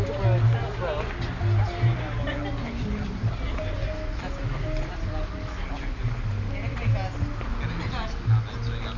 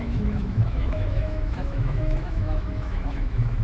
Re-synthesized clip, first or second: second